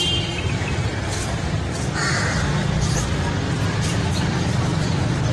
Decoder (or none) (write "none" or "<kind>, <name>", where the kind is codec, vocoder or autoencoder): vocoder, BigVGAN v2